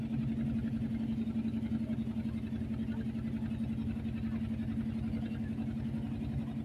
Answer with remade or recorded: recorded